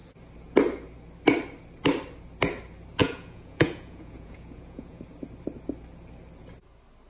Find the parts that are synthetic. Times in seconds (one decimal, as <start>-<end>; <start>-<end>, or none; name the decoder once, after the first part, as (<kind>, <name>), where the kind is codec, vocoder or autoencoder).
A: 3.0-5.0 (vocoder, Vocos)